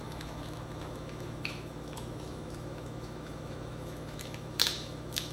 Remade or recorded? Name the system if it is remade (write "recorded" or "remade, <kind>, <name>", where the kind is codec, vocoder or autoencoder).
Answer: remade, autoencoder, DAC-VAE